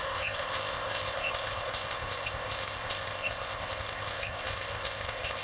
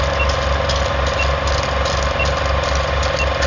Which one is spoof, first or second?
first